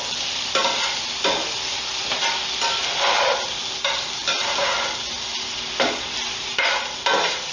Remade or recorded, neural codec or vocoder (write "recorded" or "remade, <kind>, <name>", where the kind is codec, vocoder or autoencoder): recorded